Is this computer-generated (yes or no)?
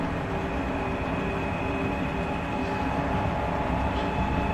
no